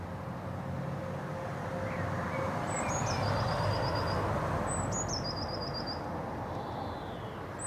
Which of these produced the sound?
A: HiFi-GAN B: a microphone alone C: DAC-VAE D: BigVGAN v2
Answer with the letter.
B